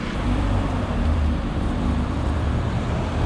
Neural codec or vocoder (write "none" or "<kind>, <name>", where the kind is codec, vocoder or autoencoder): vocoder, BigVGAN v2